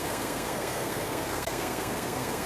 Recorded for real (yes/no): no